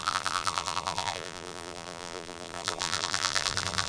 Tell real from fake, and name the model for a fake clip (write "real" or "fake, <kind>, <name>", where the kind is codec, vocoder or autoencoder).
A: fake, vocoder, BigVGAN v2